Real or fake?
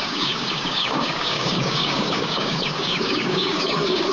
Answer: fake